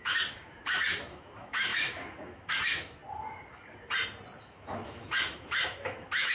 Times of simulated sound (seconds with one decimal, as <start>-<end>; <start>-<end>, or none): 0.0-3.0; 4.4-6.3